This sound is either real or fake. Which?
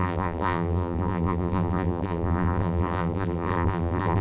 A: fake